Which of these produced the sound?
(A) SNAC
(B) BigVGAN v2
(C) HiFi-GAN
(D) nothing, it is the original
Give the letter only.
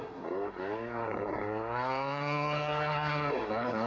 A